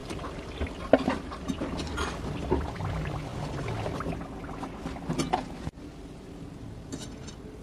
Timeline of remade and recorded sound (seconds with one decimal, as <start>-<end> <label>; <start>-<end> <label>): 0.0-2.7 remade; 2.7-7.6 recorded